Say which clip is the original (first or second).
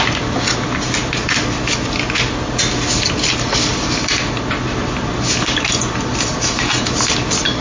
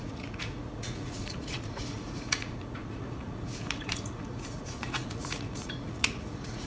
first